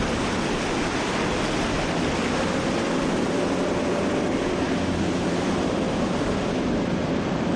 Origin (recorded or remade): recorded